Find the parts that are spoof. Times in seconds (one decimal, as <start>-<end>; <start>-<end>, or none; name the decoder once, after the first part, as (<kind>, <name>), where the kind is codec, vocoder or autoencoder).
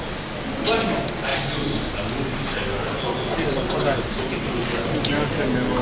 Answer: none